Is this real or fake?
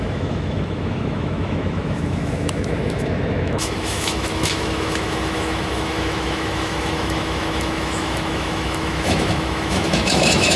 fake